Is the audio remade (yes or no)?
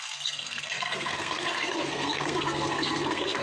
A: yes